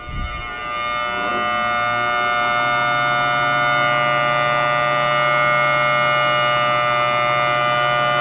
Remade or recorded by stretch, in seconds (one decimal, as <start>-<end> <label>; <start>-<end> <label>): 0.0-8.2 recorded